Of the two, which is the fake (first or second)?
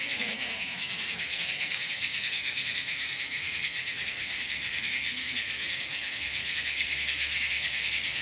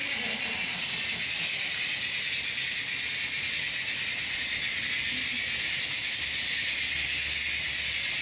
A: first